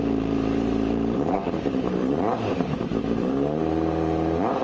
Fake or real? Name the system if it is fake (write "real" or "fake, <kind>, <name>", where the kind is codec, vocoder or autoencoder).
fake, vocoder, BigVGAN v2